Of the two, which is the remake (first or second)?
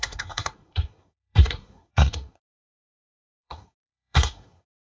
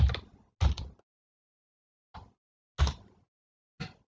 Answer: first